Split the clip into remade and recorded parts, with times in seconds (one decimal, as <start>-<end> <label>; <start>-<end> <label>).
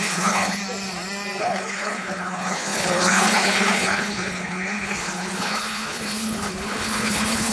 0.0-0.6 remade; 0.6-1.4 recorded; 1.4-7.5 remade